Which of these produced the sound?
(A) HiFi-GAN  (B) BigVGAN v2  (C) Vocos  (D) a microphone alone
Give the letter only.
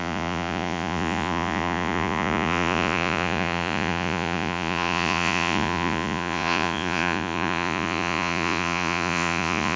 C